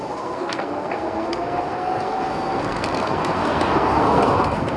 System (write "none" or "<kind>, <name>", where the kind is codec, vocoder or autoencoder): codec, SNAC